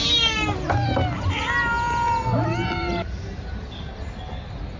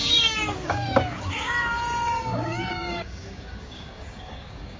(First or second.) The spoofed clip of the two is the second